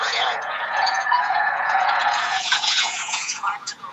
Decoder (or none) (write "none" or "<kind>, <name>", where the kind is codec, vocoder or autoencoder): vocoder, Vocos